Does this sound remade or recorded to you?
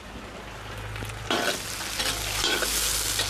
recorded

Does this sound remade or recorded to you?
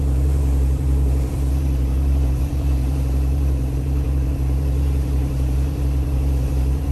remade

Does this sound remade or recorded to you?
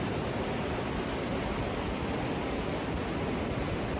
recorded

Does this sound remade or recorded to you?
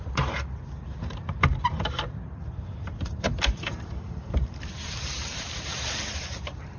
remade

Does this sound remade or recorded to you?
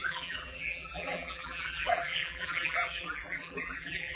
remade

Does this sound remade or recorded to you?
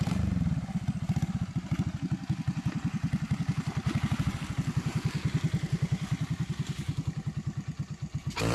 recorded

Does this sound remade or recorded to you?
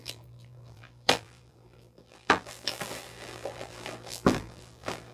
remade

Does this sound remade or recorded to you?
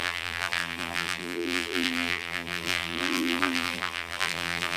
remade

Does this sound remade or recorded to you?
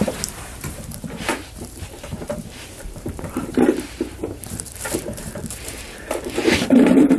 remade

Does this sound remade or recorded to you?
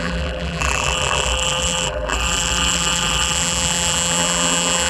remade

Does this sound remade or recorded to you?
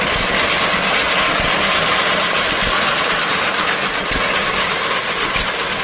recorded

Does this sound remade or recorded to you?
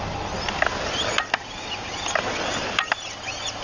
recorded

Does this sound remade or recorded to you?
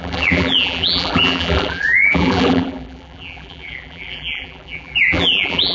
remade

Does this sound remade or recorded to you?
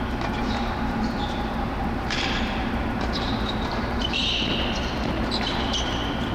remade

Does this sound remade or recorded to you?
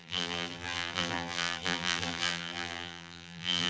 remade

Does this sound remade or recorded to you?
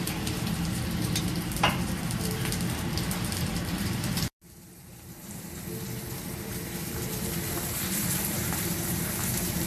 remade